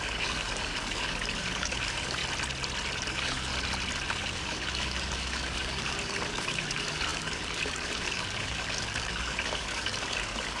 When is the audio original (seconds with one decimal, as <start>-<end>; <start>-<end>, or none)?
2.2-3.1; 3.5-4.1